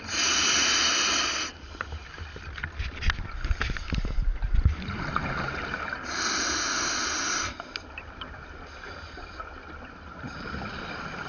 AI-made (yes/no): no